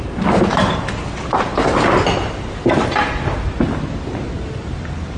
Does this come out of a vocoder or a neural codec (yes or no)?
no